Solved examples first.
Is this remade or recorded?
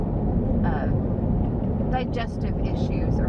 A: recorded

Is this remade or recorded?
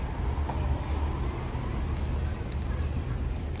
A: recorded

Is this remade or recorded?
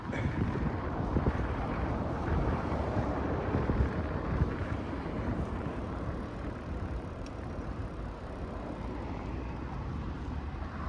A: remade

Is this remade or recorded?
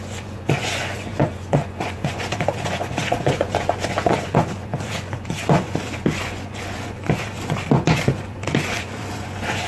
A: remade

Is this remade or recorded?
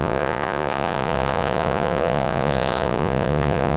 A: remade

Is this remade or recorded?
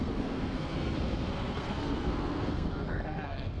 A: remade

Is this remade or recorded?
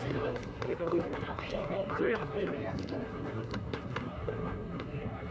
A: remade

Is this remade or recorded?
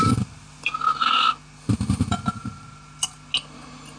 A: recorded